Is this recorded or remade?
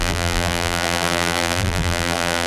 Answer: remade